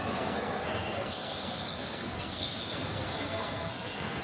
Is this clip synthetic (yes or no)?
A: yes